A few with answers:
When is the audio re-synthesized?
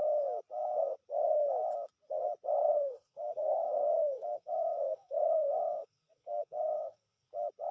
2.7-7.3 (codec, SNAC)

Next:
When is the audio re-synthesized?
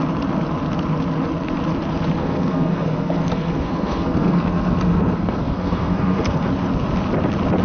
2.2-6.5 (codec, SNAC)